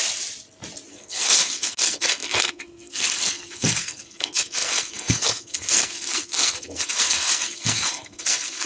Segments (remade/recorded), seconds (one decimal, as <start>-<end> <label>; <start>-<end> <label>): 0.0-0.9 recorded; 0.9-8.7 remade